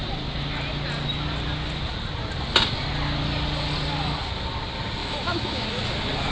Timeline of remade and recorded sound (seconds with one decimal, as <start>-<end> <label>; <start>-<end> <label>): 0.0-5.0 recorded; 5.0-5.8 remade; 5.8-6.3 recorded